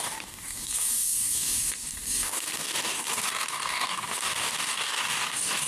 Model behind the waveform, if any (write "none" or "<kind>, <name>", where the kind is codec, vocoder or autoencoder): codec, DAC